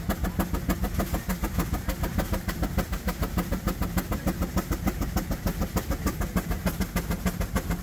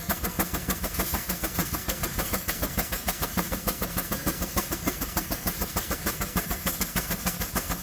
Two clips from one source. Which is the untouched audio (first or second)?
first